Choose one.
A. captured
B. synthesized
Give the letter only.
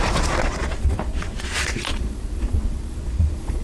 B